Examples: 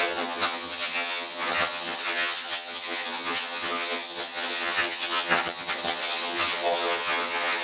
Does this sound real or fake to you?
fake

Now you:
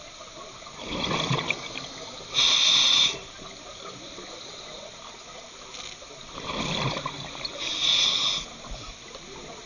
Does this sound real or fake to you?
real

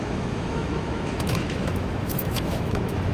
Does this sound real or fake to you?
fake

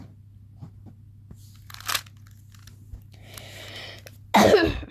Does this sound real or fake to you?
real